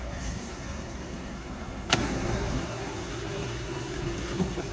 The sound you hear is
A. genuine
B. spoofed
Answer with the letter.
B